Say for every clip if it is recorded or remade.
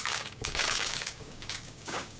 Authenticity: remade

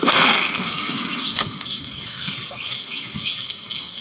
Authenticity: remade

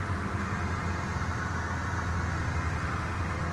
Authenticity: recorded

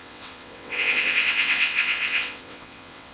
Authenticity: remade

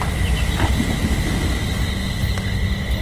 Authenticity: recorded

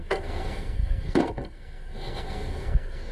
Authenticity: remade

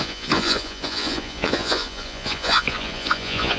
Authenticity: remade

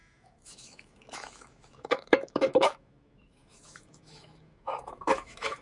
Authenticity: remade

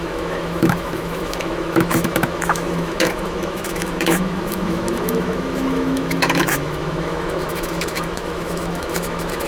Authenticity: remade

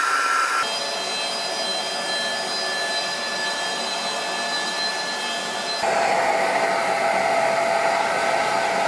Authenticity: recorded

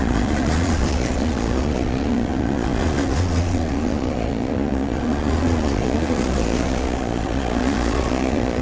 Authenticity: remade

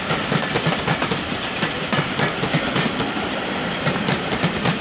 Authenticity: recorded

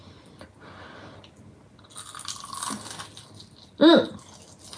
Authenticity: recorded